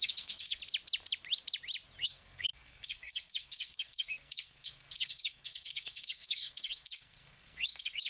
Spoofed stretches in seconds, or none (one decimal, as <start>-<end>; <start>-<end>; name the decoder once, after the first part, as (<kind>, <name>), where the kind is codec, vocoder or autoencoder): 0.0-0.6 (codec, SNAC); 2.0-8.1